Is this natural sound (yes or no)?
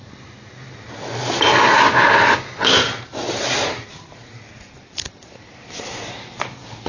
yes